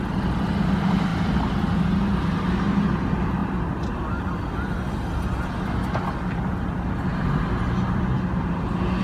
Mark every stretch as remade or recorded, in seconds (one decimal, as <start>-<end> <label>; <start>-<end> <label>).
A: 0.0-9.0 recorded